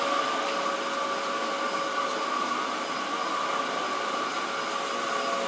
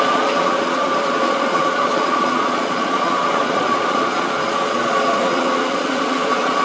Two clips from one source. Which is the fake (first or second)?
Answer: second